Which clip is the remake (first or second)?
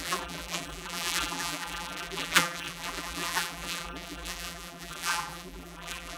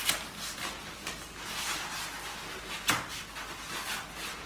first